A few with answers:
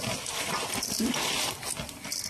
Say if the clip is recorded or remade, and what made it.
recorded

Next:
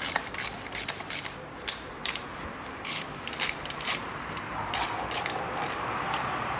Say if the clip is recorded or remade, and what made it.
remade, vocoder, BigVGAN v2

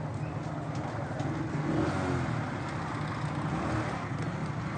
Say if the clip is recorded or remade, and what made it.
recorded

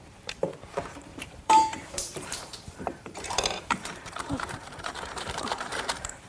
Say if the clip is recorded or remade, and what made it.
remade, vocoder, BigVGAN v2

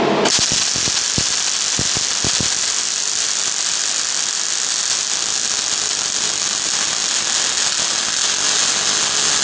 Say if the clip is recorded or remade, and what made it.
recorded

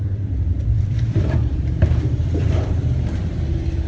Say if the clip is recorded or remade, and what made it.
remade, vocoder, BigVGAN v2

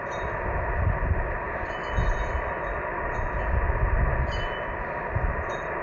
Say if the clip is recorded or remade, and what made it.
recorded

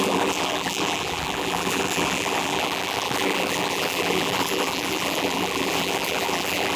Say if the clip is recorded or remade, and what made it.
remade, vocoder, BigVGAN v2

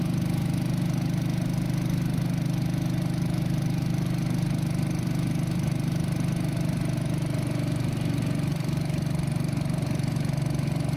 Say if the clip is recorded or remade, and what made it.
recorded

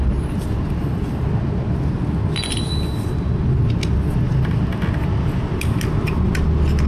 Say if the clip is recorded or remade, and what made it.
recorded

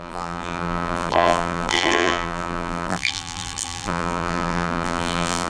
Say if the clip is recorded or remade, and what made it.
remade, vocoder, BigVGAN v2